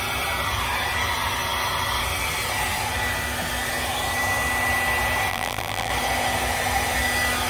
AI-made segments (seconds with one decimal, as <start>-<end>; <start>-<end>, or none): 5.3-5.9